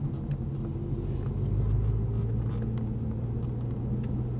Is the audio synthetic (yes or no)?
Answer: no